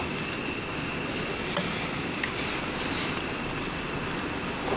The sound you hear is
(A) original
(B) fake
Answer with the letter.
A